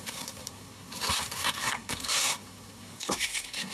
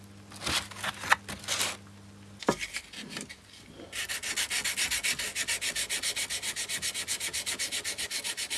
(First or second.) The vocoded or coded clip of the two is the first